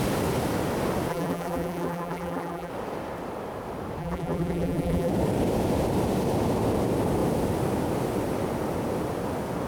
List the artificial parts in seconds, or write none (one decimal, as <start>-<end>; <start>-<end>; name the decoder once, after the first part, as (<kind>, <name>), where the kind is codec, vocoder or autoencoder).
1.1-2.7 (vocoder, BigVGAN v2); 4.0-5.1